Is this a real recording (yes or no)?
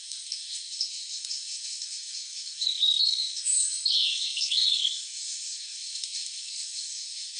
no